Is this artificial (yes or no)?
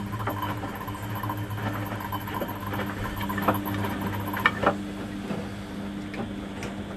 no